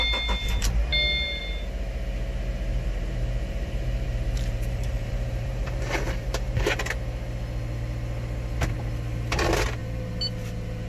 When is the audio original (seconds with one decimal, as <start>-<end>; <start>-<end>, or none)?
0.0-2.7; 6.8-10.9